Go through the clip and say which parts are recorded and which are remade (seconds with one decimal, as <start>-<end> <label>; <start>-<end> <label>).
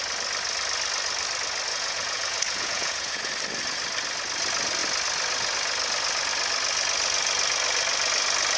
0.0-1.7 recorded; 1.7-3.3 remade; 3.3-8.6 recorded